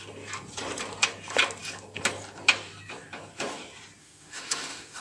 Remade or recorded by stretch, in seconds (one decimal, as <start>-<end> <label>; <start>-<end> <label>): 0.0-4.0 recorded; 4.0-5.0 remade